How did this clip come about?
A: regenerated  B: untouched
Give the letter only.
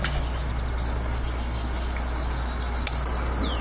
B